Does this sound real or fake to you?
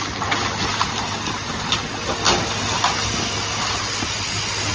real